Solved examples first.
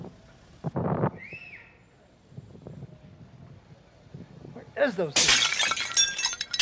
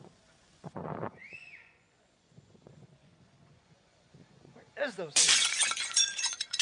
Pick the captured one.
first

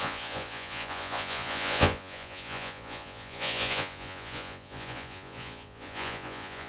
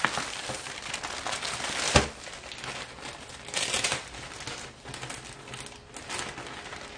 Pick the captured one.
second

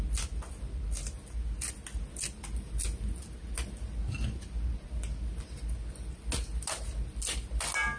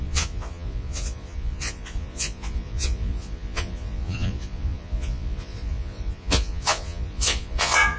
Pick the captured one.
first